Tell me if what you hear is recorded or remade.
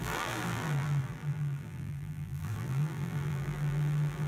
remade